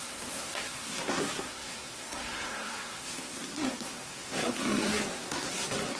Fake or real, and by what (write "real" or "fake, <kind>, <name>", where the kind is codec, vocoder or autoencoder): fake, codec, SNAC